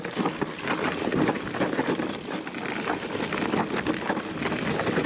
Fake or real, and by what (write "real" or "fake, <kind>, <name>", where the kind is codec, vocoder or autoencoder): real